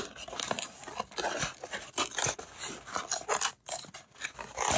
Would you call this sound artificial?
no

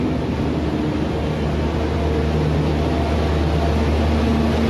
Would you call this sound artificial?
no